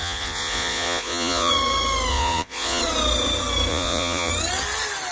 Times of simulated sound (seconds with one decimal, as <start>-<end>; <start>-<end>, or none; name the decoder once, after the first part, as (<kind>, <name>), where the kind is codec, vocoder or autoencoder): 0.0-1.5 (vocoder, Vocos); 2.1-2.8; 3.7-4.3